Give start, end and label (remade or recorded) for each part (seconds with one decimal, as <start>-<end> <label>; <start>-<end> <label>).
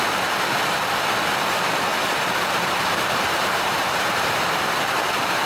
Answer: 0.0-1.9 recorded; 1.9-4.6 remade; 4.6-5.5 recorded